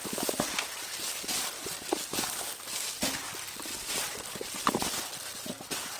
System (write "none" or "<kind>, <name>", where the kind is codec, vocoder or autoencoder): none